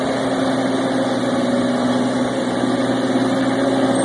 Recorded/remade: recorded